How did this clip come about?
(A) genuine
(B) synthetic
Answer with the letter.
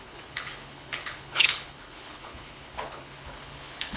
B